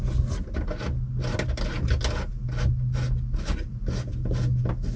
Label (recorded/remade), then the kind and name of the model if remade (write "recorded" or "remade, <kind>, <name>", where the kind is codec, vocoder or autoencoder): recorded